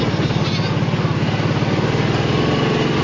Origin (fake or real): real